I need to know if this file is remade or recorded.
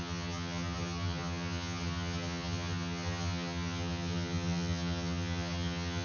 remade